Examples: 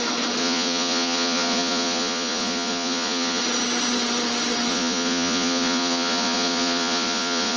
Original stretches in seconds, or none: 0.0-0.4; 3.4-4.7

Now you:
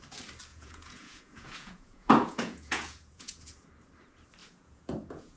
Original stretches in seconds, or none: 0.0-0.5; 3.7-4.4